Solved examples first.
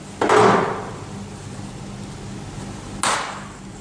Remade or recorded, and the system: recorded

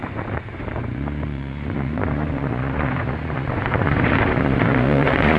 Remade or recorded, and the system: remade, vocoder, Vocos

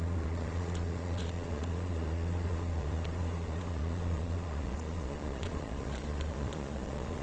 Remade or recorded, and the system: remade, vocoder, Vocos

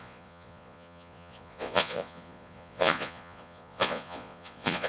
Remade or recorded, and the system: remade, vocoder, Vocos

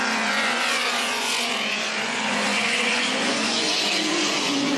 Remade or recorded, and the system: remade, vocoder, Vocos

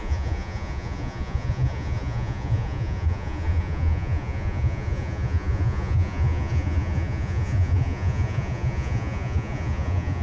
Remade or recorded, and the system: remade, vocoder, Vocos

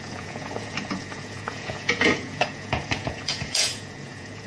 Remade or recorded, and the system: remade, vocoder, Vocos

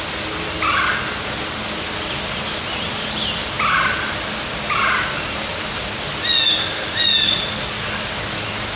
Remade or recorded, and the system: recorded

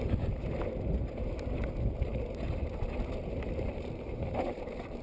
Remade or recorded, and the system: recorded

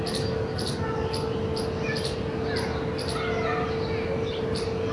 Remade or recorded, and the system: recorded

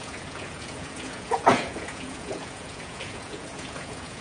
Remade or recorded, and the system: remade, vocoder, Vocos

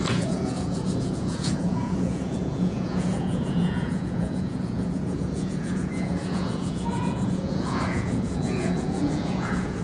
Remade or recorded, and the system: remade, vocoder, Vocos